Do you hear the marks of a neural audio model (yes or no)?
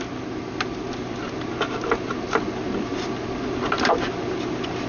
no